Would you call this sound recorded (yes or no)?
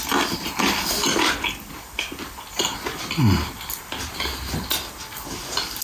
yes